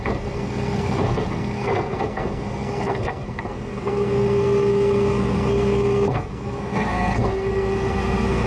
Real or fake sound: fake